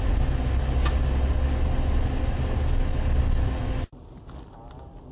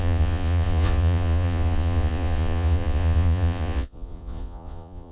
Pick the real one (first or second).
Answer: first